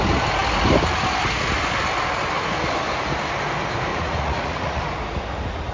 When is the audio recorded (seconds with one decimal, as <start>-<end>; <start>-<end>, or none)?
0.0-3.9; 4.8-5.7